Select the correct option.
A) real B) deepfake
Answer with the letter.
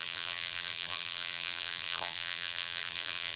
B